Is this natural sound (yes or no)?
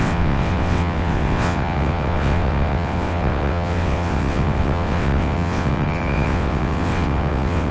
no